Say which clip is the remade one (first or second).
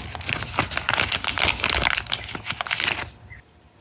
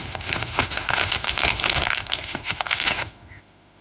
second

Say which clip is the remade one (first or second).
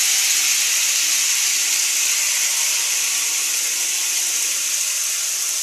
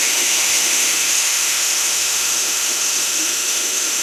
second